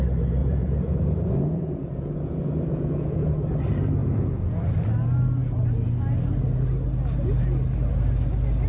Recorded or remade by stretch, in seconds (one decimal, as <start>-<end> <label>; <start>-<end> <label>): 0.0-0.4 recorded; 0.4-3.3 remade; 3.3-4.0 recorded; 4.0-4.6 remade; 4.6-8.7 recorded